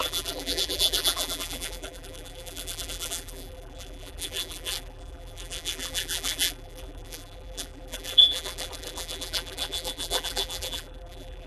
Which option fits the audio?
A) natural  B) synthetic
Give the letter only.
B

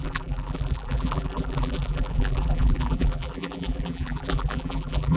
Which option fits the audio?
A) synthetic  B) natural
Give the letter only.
A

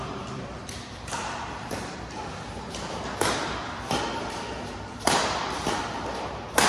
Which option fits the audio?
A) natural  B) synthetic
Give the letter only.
B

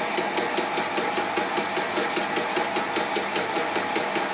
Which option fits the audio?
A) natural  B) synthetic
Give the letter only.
A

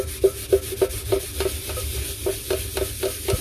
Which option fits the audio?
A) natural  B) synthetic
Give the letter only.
A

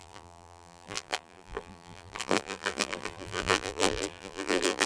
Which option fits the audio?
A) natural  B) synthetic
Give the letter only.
B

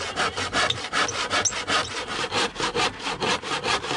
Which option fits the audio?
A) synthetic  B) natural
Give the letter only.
B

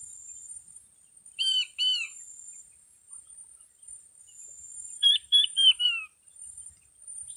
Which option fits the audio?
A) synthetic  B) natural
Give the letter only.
A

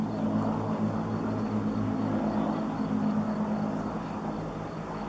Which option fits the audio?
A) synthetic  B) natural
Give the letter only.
B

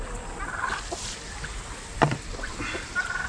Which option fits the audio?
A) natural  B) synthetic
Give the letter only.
A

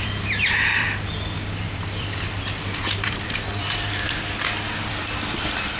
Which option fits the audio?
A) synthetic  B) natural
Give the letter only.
A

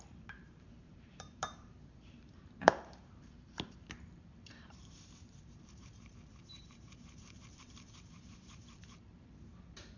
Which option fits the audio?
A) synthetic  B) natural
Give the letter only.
A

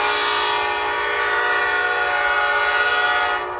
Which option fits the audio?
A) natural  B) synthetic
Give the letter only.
A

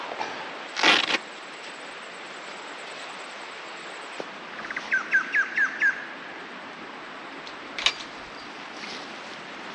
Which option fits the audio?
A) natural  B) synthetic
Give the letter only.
A